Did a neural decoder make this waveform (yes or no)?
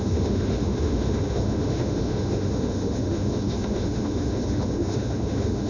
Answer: yes